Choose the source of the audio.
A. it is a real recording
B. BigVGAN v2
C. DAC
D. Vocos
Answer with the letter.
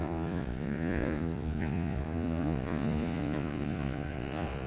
D